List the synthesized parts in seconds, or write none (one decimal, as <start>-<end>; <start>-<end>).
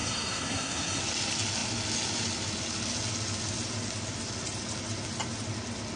0.0-1.0